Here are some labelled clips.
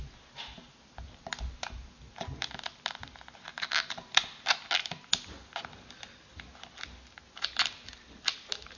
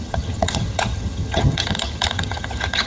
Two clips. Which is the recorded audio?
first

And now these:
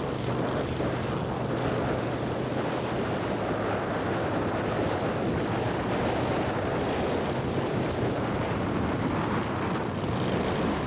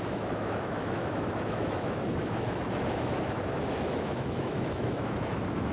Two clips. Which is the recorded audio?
first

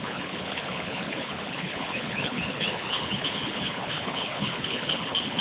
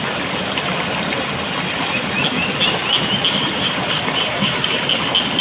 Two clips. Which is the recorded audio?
second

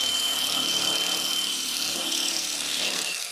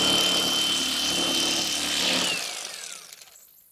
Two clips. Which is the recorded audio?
second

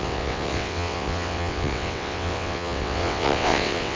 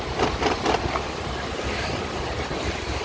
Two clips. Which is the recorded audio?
second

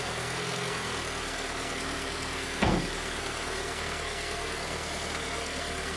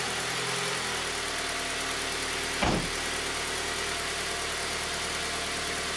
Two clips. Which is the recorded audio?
second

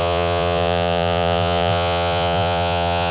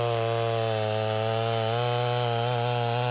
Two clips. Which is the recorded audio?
second